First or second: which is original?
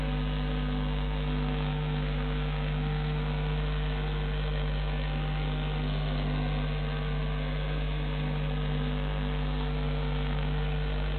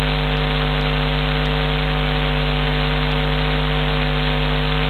second